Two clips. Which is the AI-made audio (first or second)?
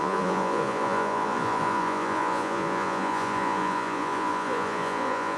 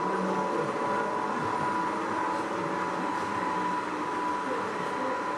first